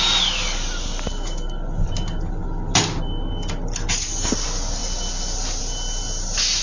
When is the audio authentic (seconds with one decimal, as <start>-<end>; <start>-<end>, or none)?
0.0-6.6